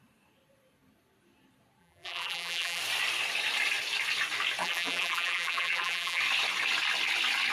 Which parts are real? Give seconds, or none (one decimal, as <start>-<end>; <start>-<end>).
0.0-1.8; 2.8-4.6; 6.2-7.5